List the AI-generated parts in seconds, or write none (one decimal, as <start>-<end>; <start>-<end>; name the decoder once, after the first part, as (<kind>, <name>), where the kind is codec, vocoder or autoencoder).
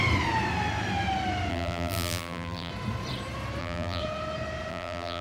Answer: 1.5-2.7 (vocoder, BigVGAN v2); 3.6-4.0; 4.7-5.2